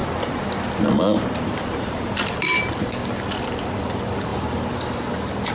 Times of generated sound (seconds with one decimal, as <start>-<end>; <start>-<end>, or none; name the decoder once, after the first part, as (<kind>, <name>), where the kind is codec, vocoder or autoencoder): none